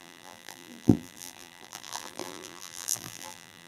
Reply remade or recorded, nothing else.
remade